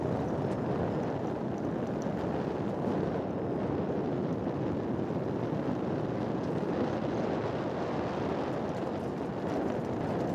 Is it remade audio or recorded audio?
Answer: recorded